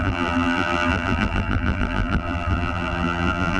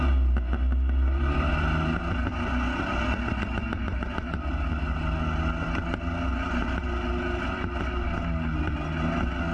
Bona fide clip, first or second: second